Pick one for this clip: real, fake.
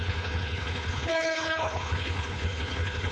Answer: fake